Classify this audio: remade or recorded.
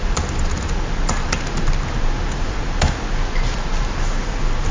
recorded